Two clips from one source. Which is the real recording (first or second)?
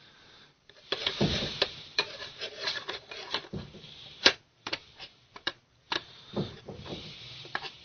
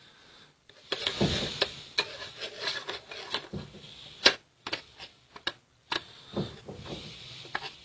second